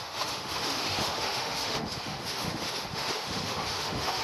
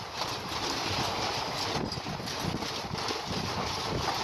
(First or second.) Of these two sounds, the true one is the second